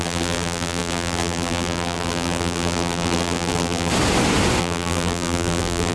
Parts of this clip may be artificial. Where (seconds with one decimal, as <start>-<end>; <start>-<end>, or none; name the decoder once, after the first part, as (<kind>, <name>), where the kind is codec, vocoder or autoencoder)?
0.0-3.9 (vocoder, BigVGAN v2); 4.6-5.9

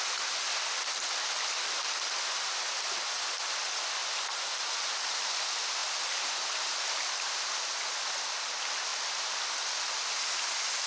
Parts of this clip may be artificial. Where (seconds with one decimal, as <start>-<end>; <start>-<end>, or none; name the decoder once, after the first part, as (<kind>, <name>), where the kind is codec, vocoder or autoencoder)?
4.0-4.6 (vocoder, BigVGAN v2)

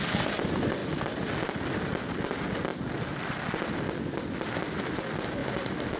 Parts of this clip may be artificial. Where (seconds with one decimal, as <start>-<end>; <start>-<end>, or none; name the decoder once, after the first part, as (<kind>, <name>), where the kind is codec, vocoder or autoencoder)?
5.4-6.0 (vocoder, BigVGAN v2)

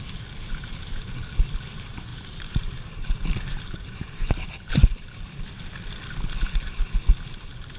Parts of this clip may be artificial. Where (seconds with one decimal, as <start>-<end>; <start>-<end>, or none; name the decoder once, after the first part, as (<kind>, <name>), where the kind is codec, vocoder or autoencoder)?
2.1-4.7 (vocoder, BigVGAN v2)

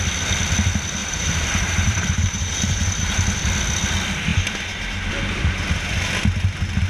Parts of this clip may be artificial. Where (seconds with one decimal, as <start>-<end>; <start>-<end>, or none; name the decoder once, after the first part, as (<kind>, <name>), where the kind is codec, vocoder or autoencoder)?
1.0-3.1 (vocoder, BigVGAN v2)

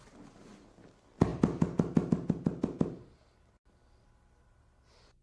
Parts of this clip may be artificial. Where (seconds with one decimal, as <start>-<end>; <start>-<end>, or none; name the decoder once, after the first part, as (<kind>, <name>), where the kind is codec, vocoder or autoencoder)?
none

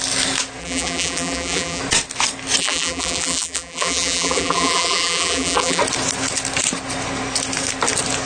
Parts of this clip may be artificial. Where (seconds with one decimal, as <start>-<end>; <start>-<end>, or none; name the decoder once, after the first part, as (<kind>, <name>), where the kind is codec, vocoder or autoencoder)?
0.6-1.8 (vocoder, BigVGAN v2); 2.6-5.8